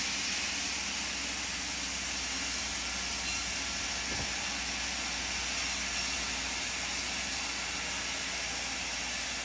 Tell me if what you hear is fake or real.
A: real